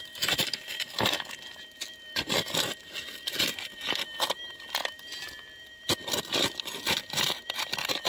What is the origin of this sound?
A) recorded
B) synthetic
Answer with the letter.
A